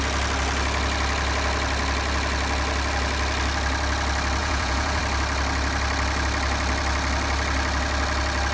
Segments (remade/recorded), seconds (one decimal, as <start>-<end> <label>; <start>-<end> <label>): 0.0-4.4 recorded; 4.4-5.0 remade; 5.0-8.5 recorded